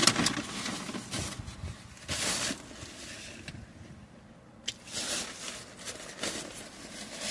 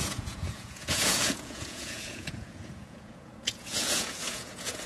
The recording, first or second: first